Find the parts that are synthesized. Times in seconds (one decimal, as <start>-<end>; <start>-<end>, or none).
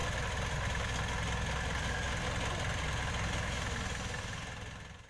none